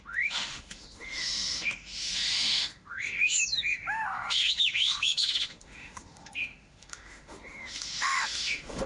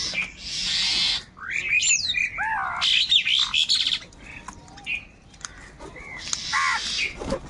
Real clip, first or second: second